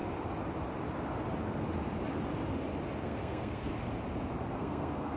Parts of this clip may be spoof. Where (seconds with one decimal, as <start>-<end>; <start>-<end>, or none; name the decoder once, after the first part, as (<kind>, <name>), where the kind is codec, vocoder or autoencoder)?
3.0-3.7 (codec, SNAC); 4.5-5.2